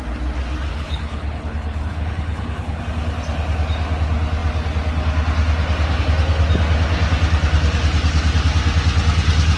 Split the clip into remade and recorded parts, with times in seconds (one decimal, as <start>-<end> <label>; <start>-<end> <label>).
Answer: 0.0-0.7 recorded; 0.7-2.8 remade; 2.8-9.6 recorded